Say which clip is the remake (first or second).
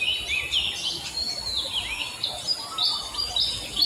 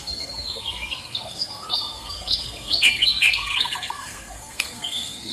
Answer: second